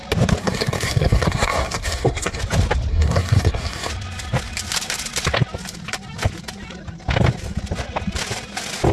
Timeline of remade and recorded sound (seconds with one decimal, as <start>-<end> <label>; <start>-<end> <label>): 0.0-0.4 recorded; 0.4-2.4 remade; 2.4-2.9 recorded; 2.9-3.9 remade; 3.9-8.9 recorded